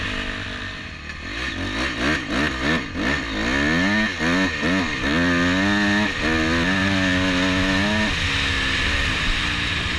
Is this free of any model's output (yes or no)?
yes